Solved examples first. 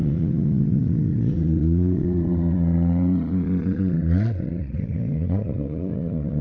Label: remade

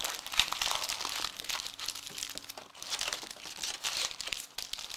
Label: recorded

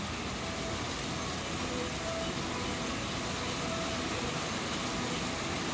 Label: recorded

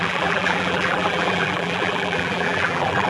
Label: remade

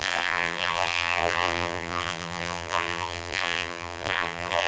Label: remade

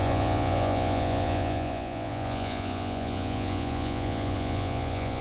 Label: remade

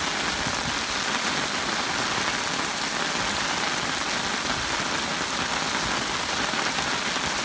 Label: recorded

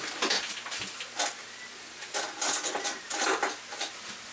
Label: recorded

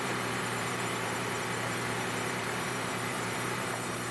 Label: remade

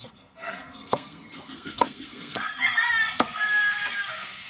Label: remade